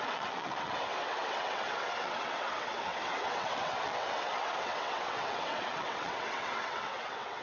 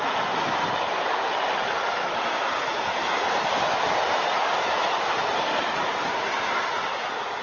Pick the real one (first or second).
second